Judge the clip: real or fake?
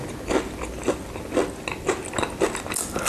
real